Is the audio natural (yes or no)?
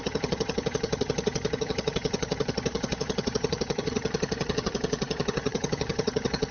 no